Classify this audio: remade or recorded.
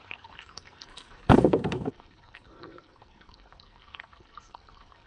remade